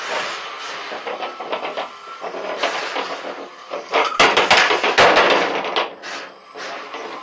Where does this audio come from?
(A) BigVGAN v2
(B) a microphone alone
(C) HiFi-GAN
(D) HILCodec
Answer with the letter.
B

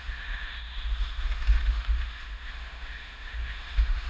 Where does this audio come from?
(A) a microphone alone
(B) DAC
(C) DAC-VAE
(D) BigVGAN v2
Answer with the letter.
C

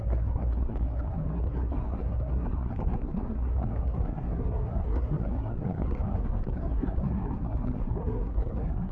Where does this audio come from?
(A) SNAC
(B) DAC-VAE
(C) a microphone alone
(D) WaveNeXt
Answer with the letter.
A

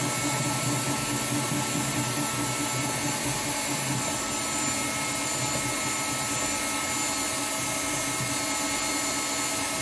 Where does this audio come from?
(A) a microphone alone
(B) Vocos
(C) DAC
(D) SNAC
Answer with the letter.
A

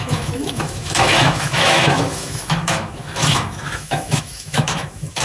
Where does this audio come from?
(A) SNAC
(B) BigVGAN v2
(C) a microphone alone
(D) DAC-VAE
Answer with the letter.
D